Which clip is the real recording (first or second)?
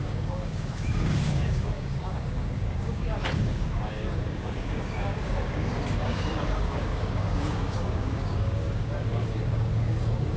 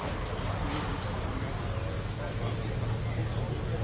second